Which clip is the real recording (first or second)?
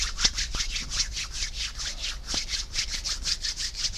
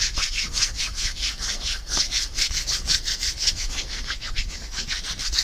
first